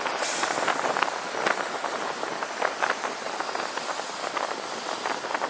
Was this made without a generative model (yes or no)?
yes